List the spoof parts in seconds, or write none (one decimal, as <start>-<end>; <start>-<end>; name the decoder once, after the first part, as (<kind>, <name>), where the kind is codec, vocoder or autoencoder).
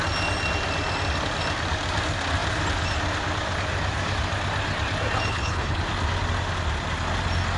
5.3-5.8 (codec, HILCodec)